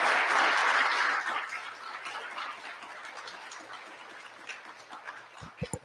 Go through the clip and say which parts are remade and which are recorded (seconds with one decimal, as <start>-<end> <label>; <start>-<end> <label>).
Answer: 0.0-5.8 recorded